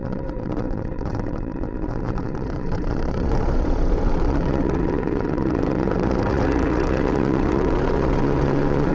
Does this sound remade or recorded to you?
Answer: remade